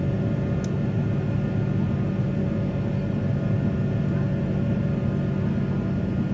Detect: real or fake real